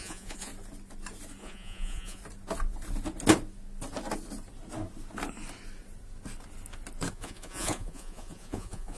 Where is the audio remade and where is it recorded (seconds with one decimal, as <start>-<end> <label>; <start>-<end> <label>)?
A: 0.0-0.5 remade; 0.5-1.4 recorded; 1.4-2.2 remade; 2.2-7.1 recorded; 7.1-9.0 remade